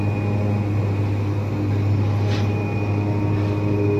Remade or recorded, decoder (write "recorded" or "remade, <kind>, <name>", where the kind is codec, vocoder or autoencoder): recorded